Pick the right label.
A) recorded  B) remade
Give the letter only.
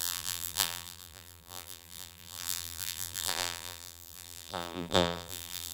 B